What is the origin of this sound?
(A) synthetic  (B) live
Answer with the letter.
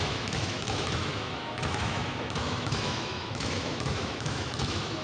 A